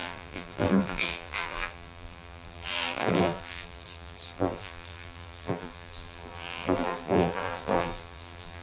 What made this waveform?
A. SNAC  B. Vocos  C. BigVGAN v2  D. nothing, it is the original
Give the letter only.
C